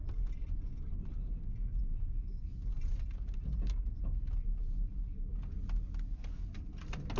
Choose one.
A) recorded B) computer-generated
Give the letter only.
A